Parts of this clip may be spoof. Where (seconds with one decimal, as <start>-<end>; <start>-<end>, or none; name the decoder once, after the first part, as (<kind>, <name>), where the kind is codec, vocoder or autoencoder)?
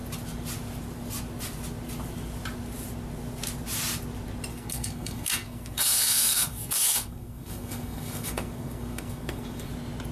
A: 4.5-9.7 (codec, SNAC)